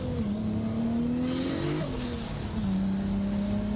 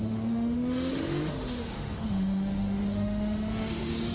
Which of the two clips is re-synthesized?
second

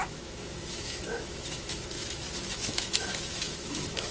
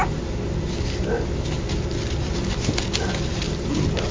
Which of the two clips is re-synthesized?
first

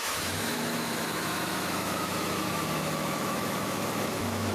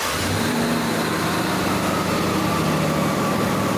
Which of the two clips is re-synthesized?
first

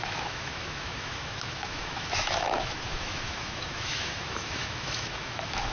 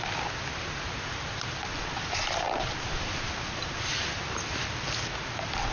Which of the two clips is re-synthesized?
first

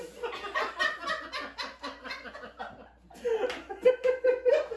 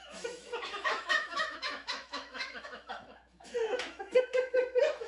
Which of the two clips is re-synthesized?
second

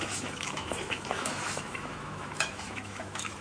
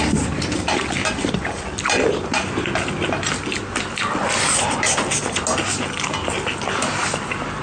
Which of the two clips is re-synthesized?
first